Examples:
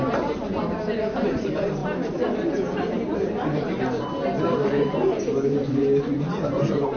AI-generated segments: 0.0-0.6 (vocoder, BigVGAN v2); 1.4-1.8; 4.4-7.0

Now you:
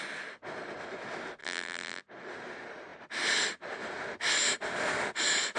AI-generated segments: 1.4-2.0 (vocoder, BigVGAN v2)

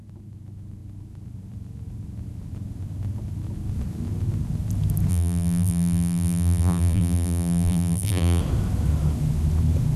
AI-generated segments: 5.1-8.4 (vocoder, BigVGAN v2)

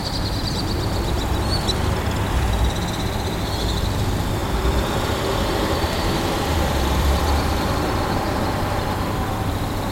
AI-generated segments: 2.9-9.9 (vocoder, BigVGAN v2)

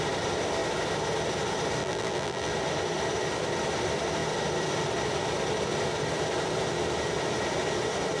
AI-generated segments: 1.8-2.5 (vocoder, BigVGAN v2)

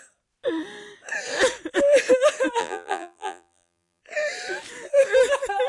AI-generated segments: 2.6-4.0 (vocoder, BigVGAN v2)

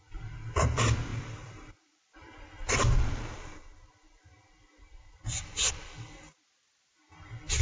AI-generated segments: 0.0-7.6 (vocoder, BigVGAN v2)

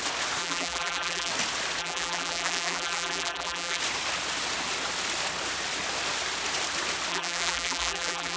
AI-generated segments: 0.4-1.3 (vocoder, BigVGAN v2); 1.8-3.8; 7.1-8.4